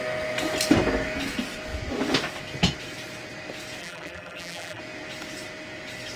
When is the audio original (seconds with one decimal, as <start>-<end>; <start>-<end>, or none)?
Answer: 0.0-3.8; 4.8-6.2